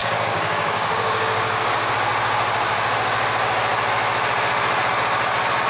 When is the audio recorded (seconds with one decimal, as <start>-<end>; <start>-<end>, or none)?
1.9-5.7